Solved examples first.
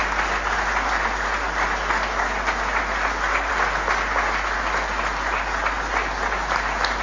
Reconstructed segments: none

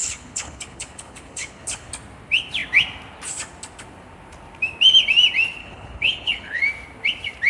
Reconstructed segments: 0.0-1.9 (codec, HILCodec); 5.6-6.6

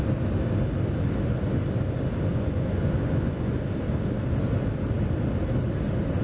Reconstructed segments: 2.3-3.5 (vocoder, Vocos)

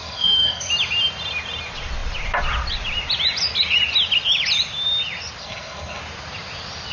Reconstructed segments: 0.0-0.7 (codec, SNAC); 5.4-6.0

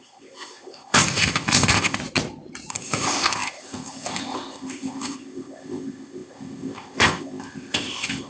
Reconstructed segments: 0.0-2.0 (codec, ZipCodec); 2.7-8.3

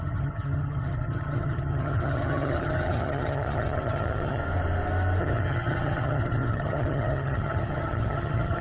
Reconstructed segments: 0.0-4.4 (vocoder, HiFi-GAN); 5.2-8.6

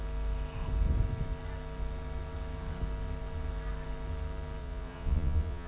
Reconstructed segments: 4.6-5.7 (vocoder, Vocos)

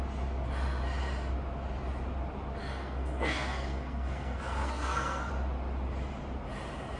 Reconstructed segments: 2.6-5.3 (codec, SNAC)